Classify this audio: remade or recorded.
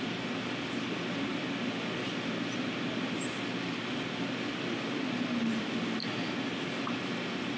recorded